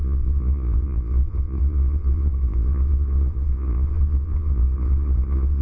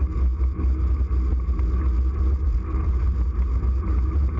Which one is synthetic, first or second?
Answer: first